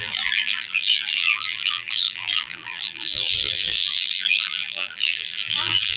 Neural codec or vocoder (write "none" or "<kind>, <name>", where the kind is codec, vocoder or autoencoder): vocoder, BigVGAN v2